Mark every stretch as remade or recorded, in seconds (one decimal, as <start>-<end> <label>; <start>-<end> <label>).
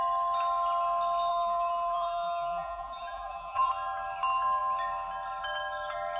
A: 0.0-1.3 recorded; 1.3-3.7 remade; 3.7-6.2 recorded